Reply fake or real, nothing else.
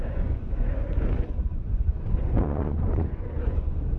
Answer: fake